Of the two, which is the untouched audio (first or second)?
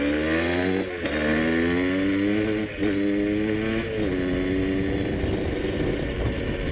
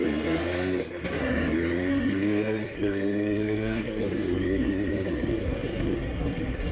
first